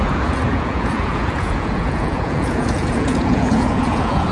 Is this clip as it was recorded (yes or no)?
no